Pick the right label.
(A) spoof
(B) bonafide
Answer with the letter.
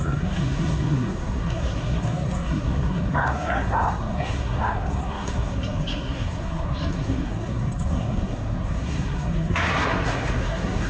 A